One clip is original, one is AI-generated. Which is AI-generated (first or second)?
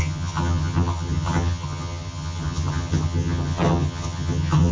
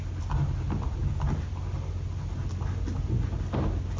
first